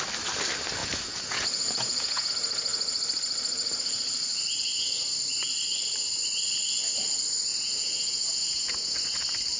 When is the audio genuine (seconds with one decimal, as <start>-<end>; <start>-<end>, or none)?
0.0-0.8; 2.3-7.5; 9.0-9.6